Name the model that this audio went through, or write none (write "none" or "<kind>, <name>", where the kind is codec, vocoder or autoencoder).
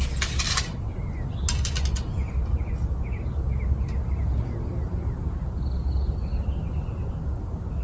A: none